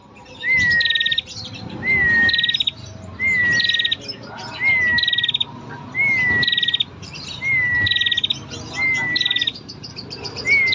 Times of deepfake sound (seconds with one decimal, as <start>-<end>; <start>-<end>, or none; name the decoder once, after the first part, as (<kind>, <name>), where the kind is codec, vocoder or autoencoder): 9.5-10.2 (vocoder, BigVGAN v2)